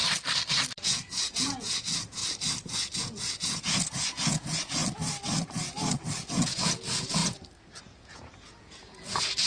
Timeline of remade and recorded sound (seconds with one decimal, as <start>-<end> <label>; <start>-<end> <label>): 0.0-0.7 recorded; 0.7-2.2 remade; 2.2-3.0 recorded; 3.0-4.8 remade; 4.8-6.3 recorded; 6.3-7.2 remade; 7.2-7.8 recorded; 7.8-9.5 remade